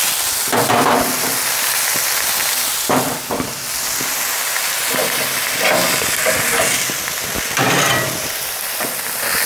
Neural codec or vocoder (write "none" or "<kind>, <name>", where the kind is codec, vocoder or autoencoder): none